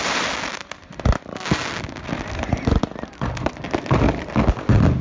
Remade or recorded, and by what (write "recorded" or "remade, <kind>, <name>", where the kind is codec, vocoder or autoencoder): recorded